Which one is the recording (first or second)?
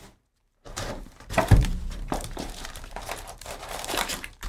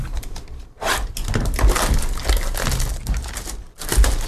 second